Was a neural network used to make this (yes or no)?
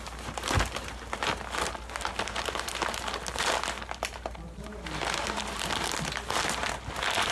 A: no